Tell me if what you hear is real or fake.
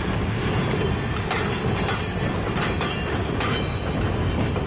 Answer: real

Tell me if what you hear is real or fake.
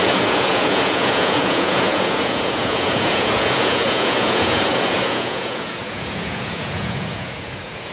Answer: fake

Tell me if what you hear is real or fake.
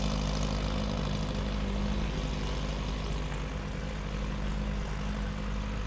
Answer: real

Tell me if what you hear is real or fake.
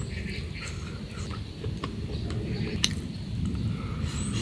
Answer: real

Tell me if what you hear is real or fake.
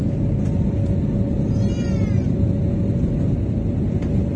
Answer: real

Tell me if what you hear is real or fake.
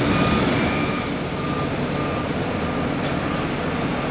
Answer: real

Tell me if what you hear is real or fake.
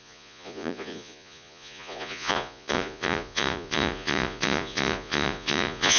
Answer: fake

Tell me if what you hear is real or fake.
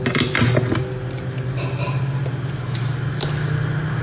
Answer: real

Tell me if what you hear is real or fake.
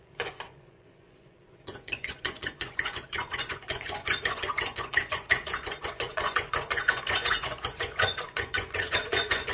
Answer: fake